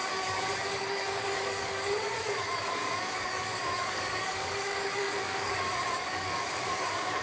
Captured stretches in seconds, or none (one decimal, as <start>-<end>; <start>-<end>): none